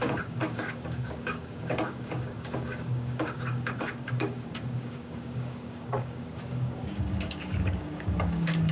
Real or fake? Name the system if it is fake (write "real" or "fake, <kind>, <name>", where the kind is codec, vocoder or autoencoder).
fake, codec, DAC